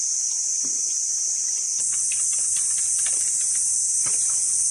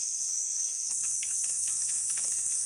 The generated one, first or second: second